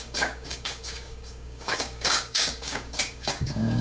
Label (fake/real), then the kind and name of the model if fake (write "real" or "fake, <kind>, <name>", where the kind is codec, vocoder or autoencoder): fake, codec, DAC